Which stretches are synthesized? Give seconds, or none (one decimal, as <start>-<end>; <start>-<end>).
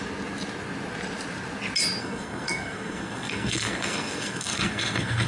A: 2.0-5.3